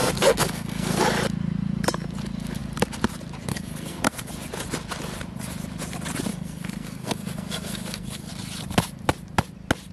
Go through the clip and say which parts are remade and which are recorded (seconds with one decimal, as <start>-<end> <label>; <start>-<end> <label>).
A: 0.0-1.0 remade; 1.0-3.5 recorded; 3.5-4.3 remade; 4.3-6.3 recorded; 6.3-8.3 remade; 8.3-9.9 recorded